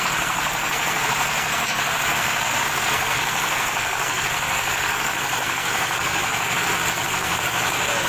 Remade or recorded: remade